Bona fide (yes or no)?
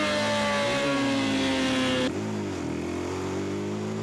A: yes